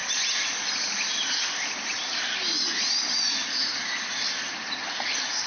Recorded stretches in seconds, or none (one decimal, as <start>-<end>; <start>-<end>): 0.0-5.5